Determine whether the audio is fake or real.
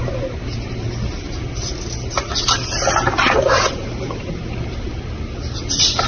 real